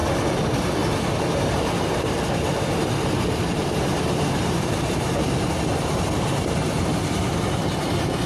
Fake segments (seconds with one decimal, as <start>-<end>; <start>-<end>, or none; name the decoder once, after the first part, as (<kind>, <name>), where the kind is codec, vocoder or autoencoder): 1.5-8.3 (vocoder, BigVGAN v2)